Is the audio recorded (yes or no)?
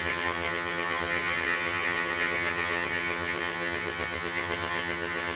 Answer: no